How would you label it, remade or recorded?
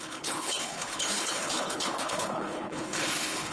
remade